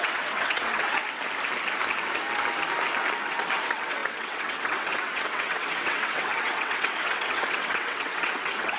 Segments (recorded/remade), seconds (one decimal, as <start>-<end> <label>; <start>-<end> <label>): 0.0-1.0 remade; 1.0-3.3 recorded; 3.3-8.8 remade